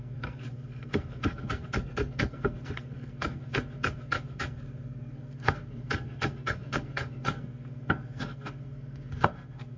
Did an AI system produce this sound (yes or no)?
yes